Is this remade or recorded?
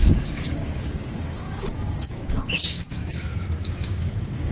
remade